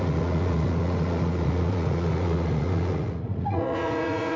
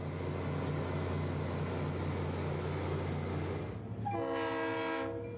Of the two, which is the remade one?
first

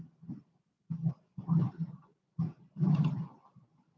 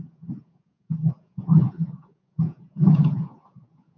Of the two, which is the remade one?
second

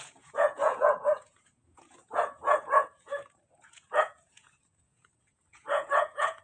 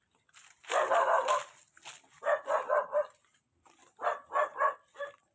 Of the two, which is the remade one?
first